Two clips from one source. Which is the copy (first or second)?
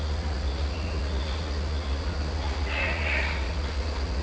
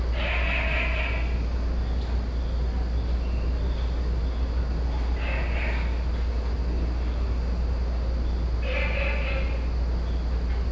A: first